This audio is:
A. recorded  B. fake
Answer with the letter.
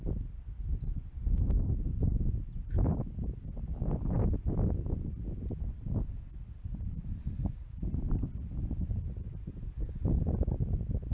A